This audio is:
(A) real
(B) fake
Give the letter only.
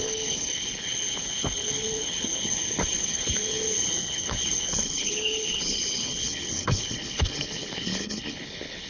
B